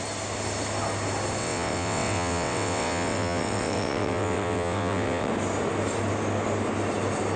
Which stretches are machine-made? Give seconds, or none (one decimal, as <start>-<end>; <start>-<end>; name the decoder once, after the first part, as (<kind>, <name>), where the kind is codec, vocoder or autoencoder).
1.4-5.3 (vocoder, WaveNeXt)